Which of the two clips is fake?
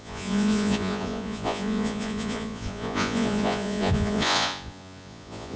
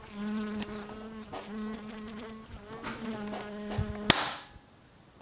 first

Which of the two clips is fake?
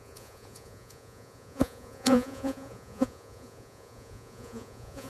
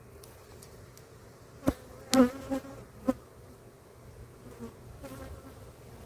first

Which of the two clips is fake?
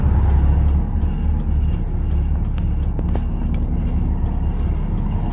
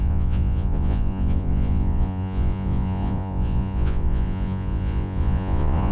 second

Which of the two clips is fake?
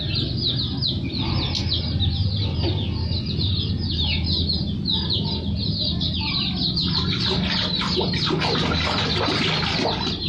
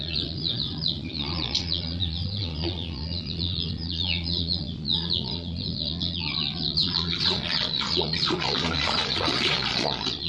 second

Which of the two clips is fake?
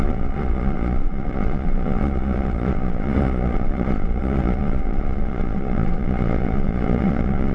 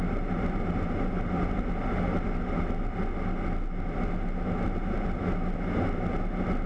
first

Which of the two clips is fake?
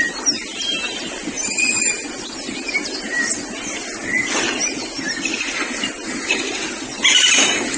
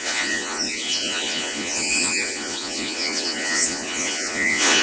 second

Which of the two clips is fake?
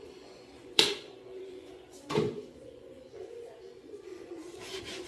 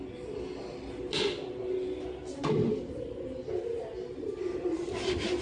first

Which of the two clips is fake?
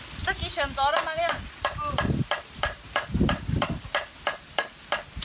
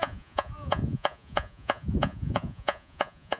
second